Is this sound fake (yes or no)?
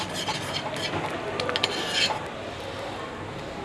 no